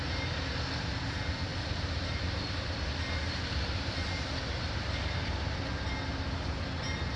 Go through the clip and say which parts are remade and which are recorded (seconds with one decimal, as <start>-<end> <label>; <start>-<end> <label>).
0.0-1.5 recorded; 1.5-4.6 remade; 4.6-7.2 recorded